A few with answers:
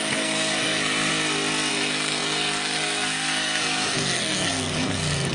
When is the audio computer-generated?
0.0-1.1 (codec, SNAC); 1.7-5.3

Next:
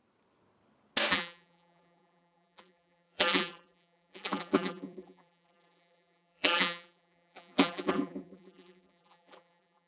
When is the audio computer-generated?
1.1-9.9 (vocoder, BigVGAN v2)

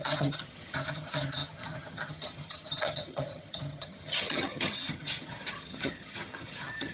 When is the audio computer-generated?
0.0-6.9 (vocoder, HiFi-GAN)

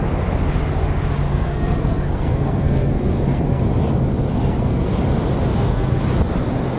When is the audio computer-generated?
1.3-3.6 (codec, SNAC); 4.3-4.9; 5.5-6.0

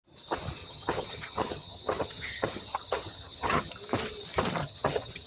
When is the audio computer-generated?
0.6-3.7 (vocoder, HiFi-GAN); 4.6-5.3

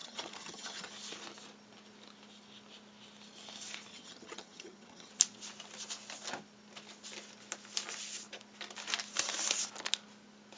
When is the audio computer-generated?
0.0-0.9 (vocoder, HiFi-GAN); 3.9-5.1

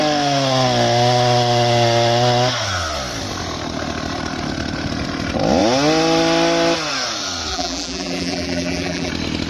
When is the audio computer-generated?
7.5-9.1 (vocoder, BigVGAN v2)

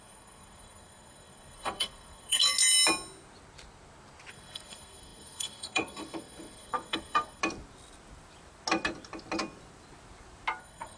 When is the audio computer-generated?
0.0-2.4 (codec, SNAC); 4.3-7.4; 10.6-11.0